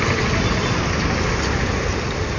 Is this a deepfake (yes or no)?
no